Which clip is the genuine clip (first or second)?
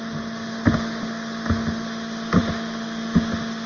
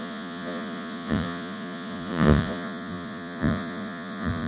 first